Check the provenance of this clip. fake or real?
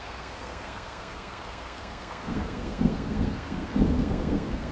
fake